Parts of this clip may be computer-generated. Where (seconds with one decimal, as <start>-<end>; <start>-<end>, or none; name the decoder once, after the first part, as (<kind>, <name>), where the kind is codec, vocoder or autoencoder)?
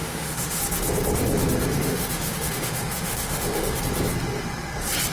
0.0-0.6 (autoencoder, DAC-VAE); 1.7-3.8